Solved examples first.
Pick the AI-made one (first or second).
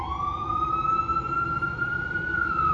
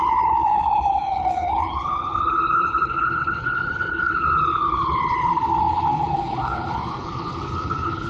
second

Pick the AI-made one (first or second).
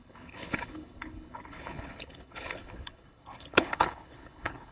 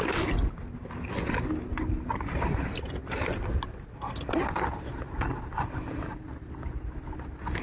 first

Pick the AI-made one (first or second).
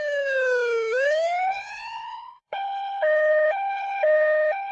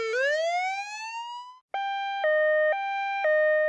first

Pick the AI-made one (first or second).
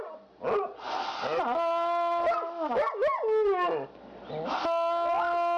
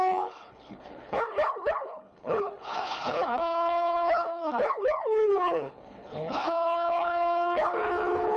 second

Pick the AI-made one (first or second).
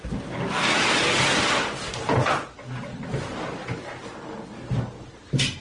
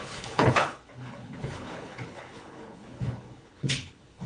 second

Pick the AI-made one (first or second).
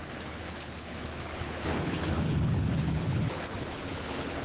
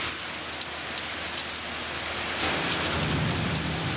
first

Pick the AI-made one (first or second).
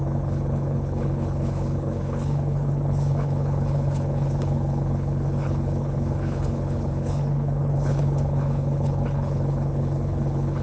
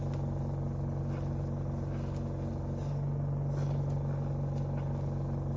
first